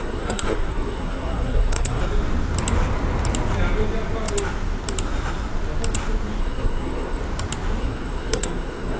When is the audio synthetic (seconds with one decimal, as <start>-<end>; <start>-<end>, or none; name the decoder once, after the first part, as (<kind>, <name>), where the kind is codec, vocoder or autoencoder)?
0.0-2.0 (codec, SNAC); 6.4-7.2; 7.8-9.0